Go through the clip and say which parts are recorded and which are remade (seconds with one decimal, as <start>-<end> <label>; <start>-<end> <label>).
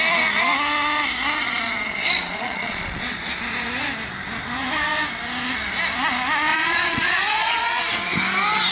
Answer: 0.0-2.0 recorded; 2.0-3.3 remade; 3.3-6.5 recorded; 6.5-7.8 remade; 7.8-8.7 recorded